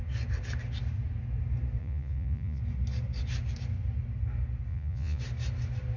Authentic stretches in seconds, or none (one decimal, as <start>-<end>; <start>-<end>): 0.0-1.8; 2.6-4.7; 5.2-6.0